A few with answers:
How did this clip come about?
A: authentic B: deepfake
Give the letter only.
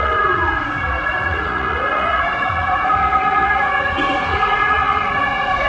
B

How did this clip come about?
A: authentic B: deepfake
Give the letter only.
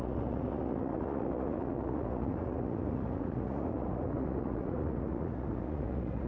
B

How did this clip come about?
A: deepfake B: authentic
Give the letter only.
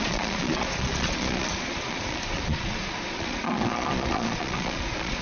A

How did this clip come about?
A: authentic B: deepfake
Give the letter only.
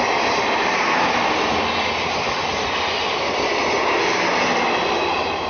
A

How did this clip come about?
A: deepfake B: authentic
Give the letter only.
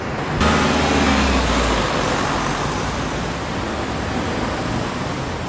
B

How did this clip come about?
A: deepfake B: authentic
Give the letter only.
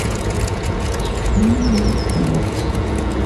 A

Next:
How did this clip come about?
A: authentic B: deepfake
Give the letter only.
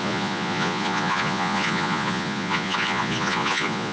B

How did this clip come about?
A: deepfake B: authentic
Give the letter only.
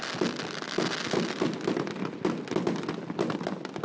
B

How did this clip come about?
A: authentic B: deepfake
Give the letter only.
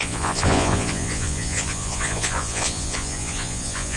B